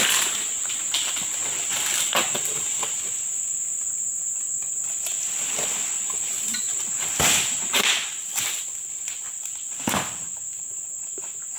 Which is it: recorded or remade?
recorded